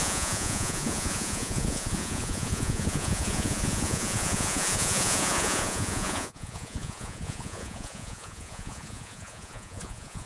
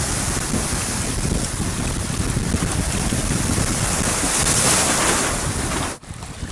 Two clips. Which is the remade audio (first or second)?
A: first